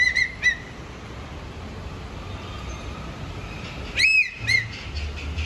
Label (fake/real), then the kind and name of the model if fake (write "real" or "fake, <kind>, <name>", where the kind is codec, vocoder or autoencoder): real